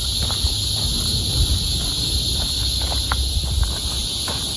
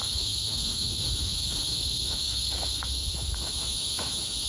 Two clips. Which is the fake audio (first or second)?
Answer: second